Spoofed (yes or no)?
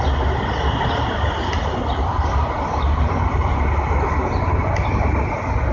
no